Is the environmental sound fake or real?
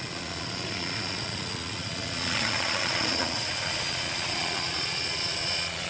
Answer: fake